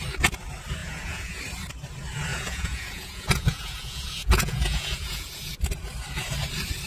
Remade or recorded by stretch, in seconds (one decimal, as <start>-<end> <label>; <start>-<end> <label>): 0.0-0.8 recorded; 0.8-1.4 remade; 1.4-2.3 recorded; 2.3-5.5 remade; 5.5-6.9 recorded